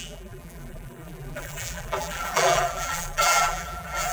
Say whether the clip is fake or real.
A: fake